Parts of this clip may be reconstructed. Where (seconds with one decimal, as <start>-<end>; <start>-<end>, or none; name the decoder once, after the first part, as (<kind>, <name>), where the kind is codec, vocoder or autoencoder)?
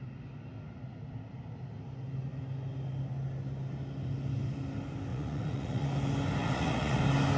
5.1-5.9 (vocoder, Vocos); 6.4-7.0